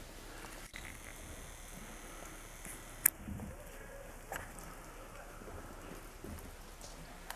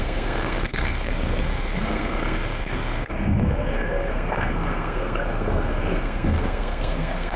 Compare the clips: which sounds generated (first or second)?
second